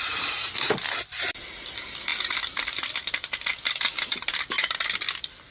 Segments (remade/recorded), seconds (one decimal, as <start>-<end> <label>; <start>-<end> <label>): 0.0-5.5 recorded